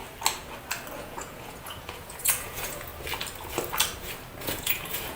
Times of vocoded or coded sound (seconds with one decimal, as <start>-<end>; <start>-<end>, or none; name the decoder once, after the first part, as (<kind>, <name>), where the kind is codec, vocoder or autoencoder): 1.0-2.9 (vocoder, Vocos); 4.4-5.2